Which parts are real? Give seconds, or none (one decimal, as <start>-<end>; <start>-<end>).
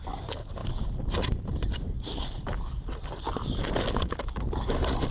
0.0-5.1